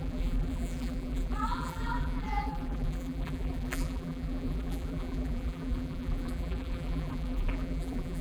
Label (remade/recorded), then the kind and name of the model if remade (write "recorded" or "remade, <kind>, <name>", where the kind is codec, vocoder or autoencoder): remade, vocoder, BigVGAN v2